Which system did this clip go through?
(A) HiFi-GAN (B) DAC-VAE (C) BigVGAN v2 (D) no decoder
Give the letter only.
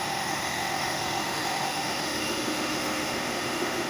B